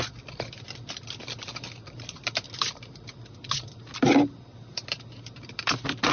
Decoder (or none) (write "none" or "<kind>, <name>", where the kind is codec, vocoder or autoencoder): none